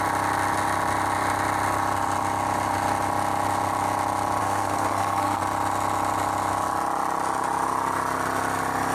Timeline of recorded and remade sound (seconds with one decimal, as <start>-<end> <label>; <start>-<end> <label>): 0.0-4.4 recorded; 4.4-5.4 remade; 5.4-8.9 recorded